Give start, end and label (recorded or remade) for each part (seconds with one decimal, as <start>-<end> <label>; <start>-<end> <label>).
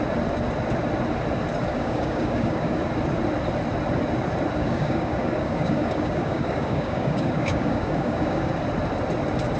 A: 0.0-1.7 recorded; 1.7-2.8 remade; 2.8-4.6 recorded; 4.6-8.5 remade; 8.5-9.6 recorded